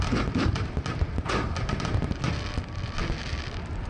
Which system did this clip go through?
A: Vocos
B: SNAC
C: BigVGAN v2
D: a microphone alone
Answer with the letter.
D